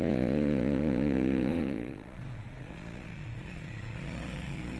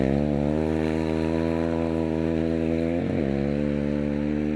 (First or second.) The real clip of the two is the second